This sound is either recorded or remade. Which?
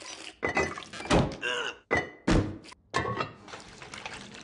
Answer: recorded